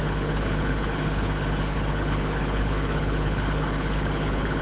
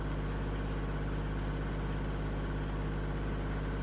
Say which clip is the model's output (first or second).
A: first